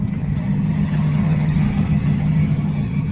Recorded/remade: remade